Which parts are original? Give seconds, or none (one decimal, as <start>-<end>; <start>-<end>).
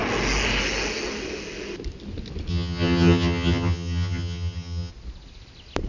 0.0-2.5; 4.9-5.9